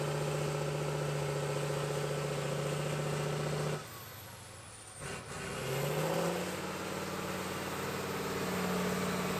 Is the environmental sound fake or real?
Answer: real